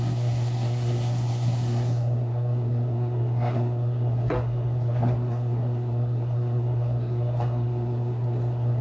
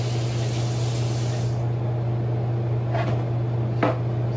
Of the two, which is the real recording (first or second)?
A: second